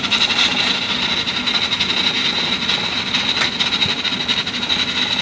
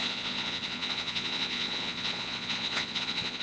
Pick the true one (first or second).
first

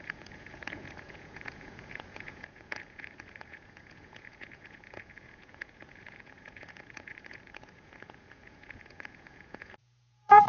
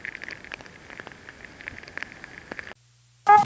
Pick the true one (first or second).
second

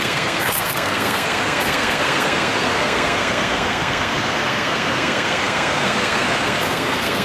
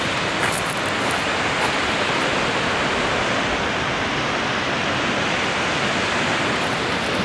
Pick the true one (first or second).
second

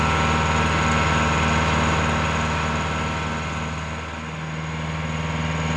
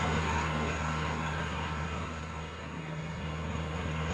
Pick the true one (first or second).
first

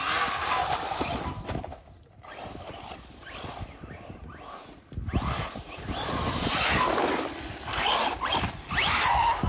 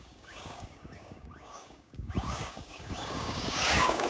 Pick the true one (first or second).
first